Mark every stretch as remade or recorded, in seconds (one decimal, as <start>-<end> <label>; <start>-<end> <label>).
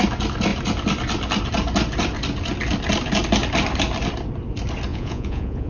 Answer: 0.0-4.9 recorded; 4.9-5.7 remade